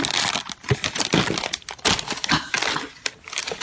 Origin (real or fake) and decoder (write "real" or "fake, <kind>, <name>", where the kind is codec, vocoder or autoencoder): real